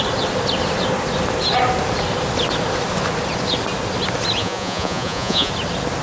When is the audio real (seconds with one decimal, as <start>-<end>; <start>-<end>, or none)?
0.0-4.4; 5.5-6.0